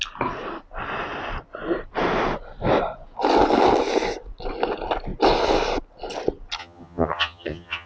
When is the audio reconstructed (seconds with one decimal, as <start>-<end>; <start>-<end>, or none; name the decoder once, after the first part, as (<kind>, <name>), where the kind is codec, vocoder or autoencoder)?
6.6-7.9 (vocoder, HiFi-GAN)